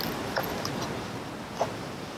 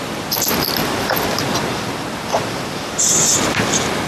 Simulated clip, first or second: second